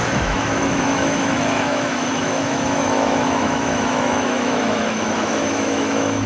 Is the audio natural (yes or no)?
no